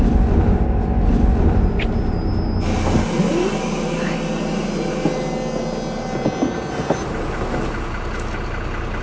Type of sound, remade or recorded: recorded